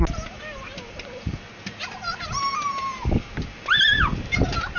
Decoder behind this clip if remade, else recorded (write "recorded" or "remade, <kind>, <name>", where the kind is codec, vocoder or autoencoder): recorded